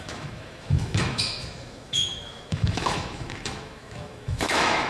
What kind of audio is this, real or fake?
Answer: fake